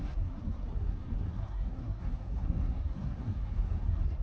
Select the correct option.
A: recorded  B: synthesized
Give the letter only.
B